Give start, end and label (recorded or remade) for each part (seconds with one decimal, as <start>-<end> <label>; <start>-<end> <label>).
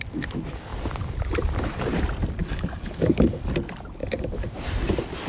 0.0-2.4 recorded; 2.4-3.5 remade; 3.5-4.0 recorded; 4.0-4.5 remade; 4.5-5.3 recorded